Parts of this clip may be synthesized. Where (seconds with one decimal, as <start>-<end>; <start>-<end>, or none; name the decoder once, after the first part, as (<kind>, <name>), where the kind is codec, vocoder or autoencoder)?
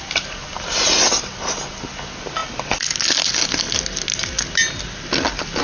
none